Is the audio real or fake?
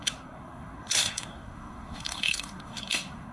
fake